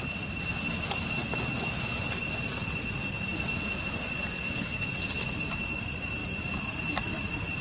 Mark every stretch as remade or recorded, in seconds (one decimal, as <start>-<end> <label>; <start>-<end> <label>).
0.0-7.6 recorded

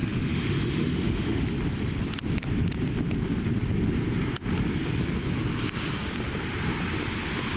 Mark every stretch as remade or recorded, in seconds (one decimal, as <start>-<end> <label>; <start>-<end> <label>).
0.0-1.4 remade; 1.4-7.6 recorded

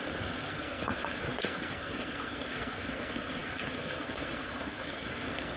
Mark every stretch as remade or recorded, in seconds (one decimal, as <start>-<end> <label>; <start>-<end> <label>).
0.0-5.6 remade

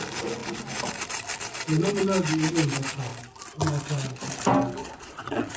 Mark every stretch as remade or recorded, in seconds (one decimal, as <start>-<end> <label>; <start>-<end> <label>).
0.0-4.8 recorded; 4.8-5.6 remade

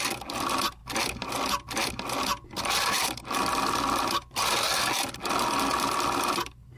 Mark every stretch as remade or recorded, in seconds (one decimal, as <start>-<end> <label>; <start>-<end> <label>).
0.0-6.8 recorded

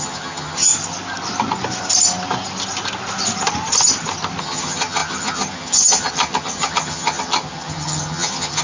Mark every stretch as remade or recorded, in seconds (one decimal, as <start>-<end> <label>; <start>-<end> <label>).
0.0-0.7 remade; 0.7-4.4 recorded; 4.4-8.6 remade

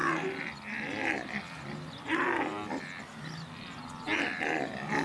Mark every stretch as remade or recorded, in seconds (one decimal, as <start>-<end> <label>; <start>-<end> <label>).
0.0-5.0 recorded